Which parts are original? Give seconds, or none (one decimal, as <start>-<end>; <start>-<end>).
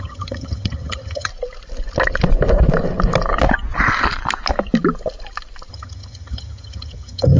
1.3-5.7